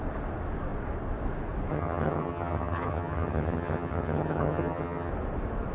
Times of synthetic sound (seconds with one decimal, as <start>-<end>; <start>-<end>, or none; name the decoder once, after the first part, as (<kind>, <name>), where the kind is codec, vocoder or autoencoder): 1.7-5.1 (vocoder, HiFi-GAN)